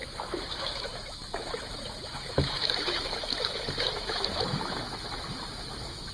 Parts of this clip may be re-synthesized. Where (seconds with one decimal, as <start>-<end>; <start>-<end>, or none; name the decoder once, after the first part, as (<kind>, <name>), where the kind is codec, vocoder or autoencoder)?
0.0-6.1 (autoencoder, DAC-VAE)